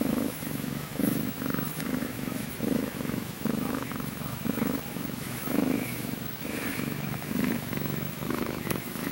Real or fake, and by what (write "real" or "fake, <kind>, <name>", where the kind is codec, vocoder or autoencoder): fake, autoencoder, DAC-VAE